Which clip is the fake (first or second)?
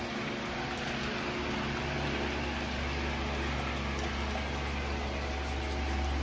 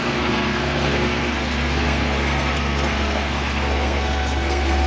second